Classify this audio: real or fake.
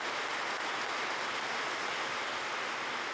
real